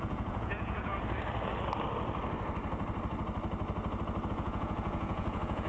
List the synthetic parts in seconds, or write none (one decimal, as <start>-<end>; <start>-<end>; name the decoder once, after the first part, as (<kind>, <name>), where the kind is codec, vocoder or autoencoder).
0.0-0.9 (vocoder, Vocos); 4.3-5.7